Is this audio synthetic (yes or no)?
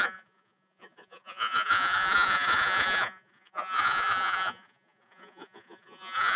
yes